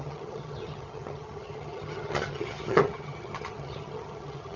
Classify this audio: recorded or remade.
remade